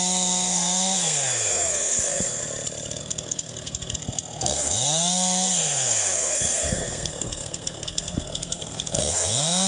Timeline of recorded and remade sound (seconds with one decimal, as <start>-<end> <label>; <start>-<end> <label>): 0.0-2.4 remade; 2.4-3.0 recorded; 3.0-9.7 remade